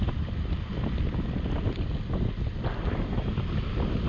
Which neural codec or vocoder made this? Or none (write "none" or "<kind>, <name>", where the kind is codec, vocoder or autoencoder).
none